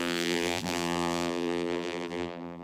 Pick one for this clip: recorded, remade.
remade